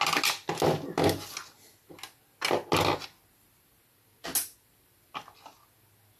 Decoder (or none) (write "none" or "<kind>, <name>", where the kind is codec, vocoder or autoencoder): none